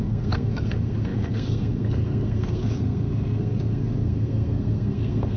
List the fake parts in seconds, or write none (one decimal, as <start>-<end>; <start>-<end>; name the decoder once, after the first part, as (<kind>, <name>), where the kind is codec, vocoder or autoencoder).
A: 0.0-5.4 (codec, SNAC)